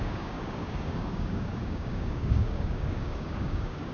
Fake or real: fake